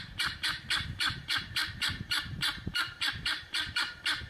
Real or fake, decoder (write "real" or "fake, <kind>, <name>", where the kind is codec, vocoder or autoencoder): fake, vocoder, BigVGAN v2